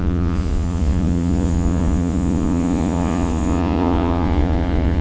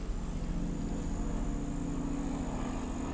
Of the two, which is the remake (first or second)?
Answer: first